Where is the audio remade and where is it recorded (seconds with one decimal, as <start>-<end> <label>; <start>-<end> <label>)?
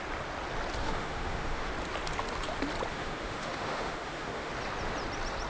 0.0-0.8 recorded; 0.8-1.7 remade; 1.7-2.9 recorded; 2.9-4.5 remade; 4.5-5.5 recorded